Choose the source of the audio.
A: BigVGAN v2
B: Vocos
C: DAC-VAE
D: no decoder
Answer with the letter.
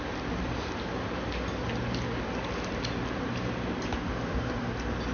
D